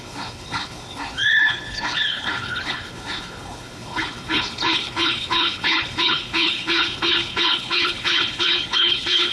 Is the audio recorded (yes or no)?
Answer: no